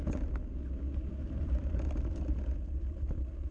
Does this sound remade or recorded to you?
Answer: recorded